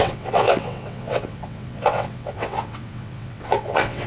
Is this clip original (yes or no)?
no